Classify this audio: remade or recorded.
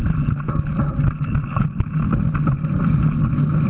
recorded